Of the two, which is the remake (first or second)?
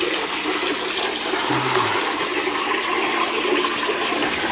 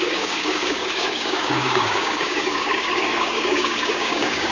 second